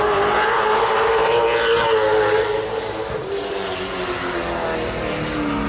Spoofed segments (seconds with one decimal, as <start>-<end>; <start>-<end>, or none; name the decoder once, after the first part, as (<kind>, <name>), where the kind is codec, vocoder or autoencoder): none